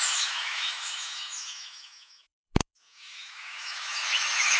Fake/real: fake